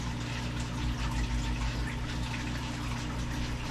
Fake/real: real